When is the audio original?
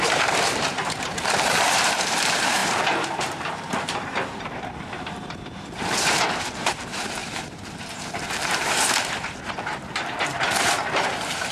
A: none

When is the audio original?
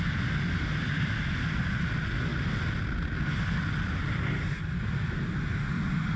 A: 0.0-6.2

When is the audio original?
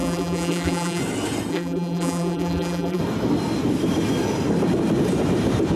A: 1.0-1.5; 3.0-5.8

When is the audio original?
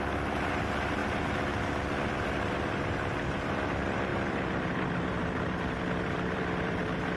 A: 1.0-2.3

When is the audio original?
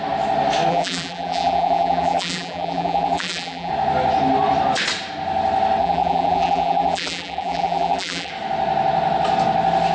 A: 0.0-0.7; 3.7-5.8; 8.3-9.9